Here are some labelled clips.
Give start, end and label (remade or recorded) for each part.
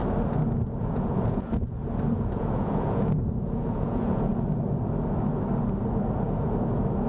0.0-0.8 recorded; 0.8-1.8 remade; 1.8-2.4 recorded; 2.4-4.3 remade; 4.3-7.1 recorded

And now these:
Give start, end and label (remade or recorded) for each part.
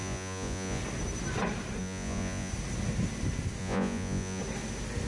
0.0-0.8 remade; 0.8-1.8 recorded; 1.8-2.5 remade; 2.5-3.6 recorded; 3.6-4.4 remade; 4.4-5.1 recorded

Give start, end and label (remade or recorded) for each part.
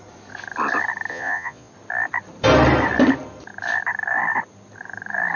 0.0-1.1 recorded; 1.1-1.7 remade; 1.7-5.4 recorded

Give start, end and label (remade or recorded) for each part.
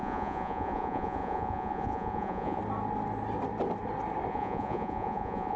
0.0-2.6 remade; 2.6-4.3 recorded; 4.3-5.6 remade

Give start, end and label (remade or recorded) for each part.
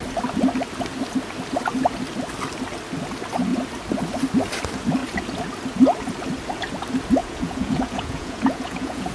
0.0-7.2 recorded; 7.2-9.1 remade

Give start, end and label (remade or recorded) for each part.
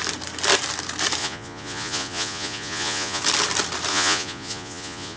0.0-1.2 recorded; 1.2-3.2 remade; 3.2-3.9 recorded; 3.9-5.2 remade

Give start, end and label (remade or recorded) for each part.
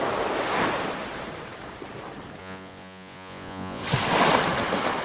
0.0-2.4 recorded; 2.4-3.8 remade; 3.8-5.0 recorded